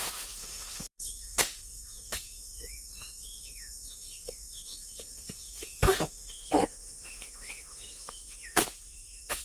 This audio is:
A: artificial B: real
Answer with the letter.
A